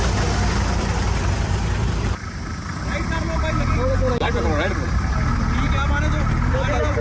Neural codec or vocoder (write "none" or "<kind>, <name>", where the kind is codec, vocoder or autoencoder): none